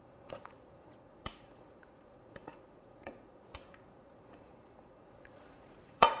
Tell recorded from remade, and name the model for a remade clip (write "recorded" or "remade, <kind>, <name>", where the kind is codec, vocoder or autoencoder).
remade, vocoder, Vocos